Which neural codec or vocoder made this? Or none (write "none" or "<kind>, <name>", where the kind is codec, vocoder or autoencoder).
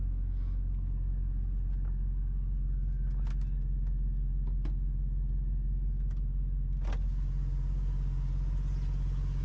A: none